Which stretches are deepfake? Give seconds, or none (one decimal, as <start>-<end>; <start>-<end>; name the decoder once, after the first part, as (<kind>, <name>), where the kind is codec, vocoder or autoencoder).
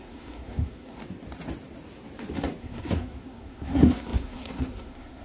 0.0-1.0 (codec, SNAC); 2.6-5.2